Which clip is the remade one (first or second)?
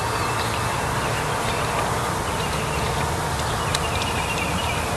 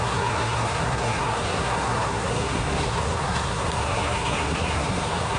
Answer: second